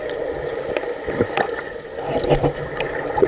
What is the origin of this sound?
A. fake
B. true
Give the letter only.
B